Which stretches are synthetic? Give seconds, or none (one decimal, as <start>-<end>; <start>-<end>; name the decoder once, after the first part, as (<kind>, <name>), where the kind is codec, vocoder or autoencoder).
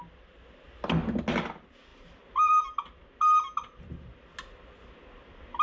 none